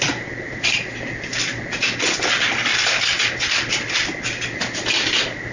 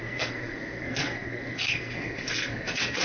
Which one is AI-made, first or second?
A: second